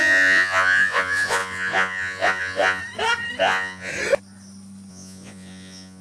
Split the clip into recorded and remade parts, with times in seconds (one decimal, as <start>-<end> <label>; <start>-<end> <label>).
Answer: 0.0-2.8 remade; 2.8-3.4 recorded; 3.4-3.9 remade; 3.9-4.9 recorded; 4.9-6.0 remade